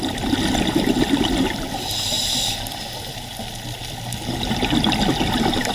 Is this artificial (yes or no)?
no